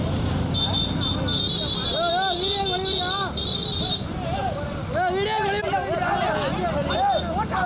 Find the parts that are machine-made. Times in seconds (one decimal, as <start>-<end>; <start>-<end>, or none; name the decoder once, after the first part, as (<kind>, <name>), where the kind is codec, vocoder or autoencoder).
none